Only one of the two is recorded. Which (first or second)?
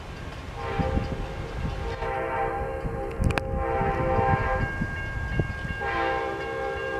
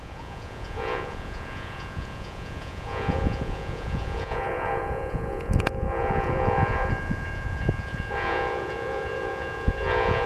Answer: first